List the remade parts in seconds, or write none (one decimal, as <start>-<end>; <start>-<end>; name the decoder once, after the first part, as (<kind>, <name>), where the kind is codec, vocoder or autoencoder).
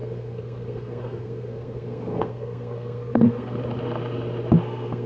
0.0-3.6 (codec, SNAC); 4.6-5.1